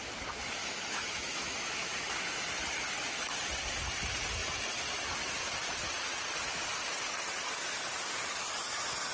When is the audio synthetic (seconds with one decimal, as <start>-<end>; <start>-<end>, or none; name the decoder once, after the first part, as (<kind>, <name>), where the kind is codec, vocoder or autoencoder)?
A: 0.6-2.2 (autoencoder, DAC-VAE)